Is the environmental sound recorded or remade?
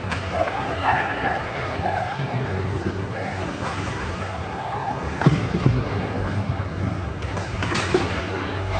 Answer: remade